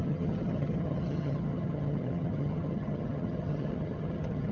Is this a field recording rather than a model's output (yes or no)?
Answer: no